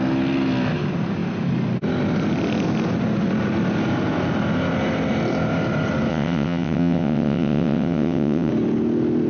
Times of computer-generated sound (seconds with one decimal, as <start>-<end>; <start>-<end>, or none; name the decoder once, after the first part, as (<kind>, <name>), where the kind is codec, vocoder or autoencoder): 6.1-8.5 (vocoder, WaveNeXt)